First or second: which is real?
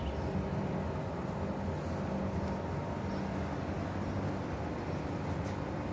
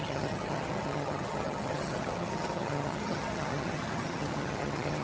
first